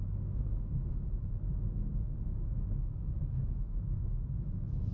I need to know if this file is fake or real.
fake